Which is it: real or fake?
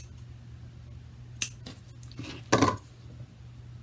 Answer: real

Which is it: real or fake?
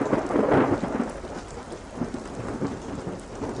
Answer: real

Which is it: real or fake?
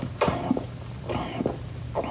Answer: real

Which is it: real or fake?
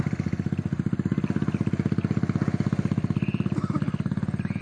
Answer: real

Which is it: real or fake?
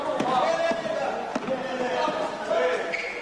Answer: real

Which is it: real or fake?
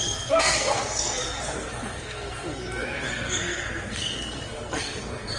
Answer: fake